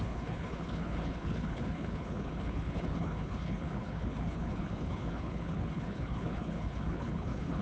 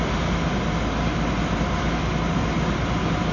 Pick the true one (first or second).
second